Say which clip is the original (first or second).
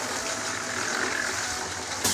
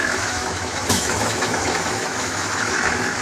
first